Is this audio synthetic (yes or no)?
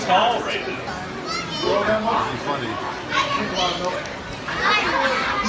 no